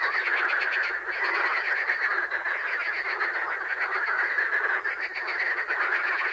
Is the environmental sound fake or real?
real